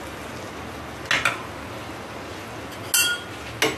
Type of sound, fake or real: real